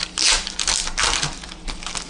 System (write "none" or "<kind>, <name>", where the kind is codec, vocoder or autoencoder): none